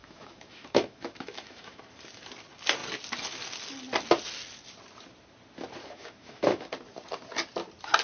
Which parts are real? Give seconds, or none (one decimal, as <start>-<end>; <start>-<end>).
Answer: 1.8-5.8; 6.7-8.0